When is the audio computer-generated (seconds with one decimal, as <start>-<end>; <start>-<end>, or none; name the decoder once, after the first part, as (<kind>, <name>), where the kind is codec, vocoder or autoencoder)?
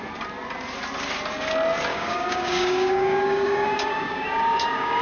1.9-5.0 (codec, DAC)